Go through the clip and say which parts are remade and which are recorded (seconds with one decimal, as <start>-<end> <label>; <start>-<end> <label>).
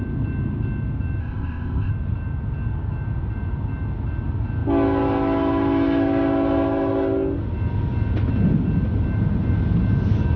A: 0.0-1.2 recorded; 1.2-1.9 remade; 1.9-10.4 recorded